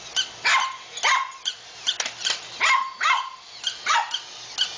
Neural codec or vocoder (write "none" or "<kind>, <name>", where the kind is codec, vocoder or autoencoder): none